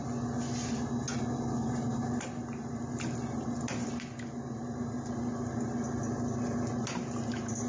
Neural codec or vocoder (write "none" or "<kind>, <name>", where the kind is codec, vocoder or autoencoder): none